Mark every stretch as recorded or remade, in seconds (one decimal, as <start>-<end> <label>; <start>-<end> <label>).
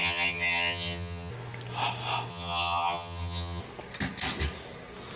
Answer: 0.0-1.3 remade; 1.3-2.3 recorded; 2.3-3.6 remade; 3.6-5.2 recorded